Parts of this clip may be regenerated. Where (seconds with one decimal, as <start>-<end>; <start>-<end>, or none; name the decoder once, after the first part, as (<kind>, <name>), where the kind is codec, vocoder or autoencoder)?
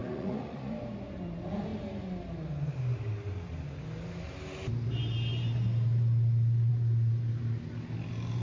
0.0-0.7 (vocoder, Vocos)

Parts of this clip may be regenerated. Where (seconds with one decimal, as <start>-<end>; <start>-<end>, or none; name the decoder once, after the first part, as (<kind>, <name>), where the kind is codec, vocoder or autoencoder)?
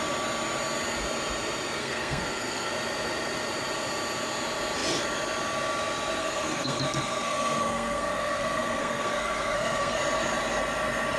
1.8-2.7 (codec, SNAC); 6.2-10.0